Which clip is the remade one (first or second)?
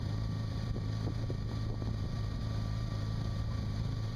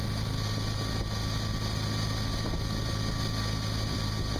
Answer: first